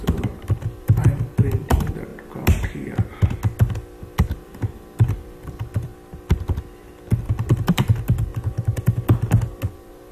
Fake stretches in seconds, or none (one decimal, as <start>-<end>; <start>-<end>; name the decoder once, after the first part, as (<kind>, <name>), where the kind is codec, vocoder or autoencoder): 0.0-2.1 (vocoder, BigVGAN v2); 4.0-5.9; 7.2-8.3; 9.7-10.1